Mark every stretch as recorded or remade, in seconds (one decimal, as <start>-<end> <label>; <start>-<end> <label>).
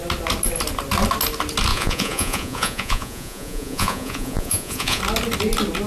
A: 0.0-1.7 recorded; 1.7-5.0 remade; 5.0-5.9 recorded